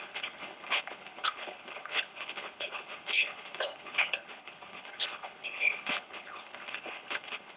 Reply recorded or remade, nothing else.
remade